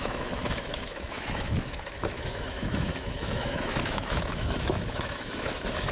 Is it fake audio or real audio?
fake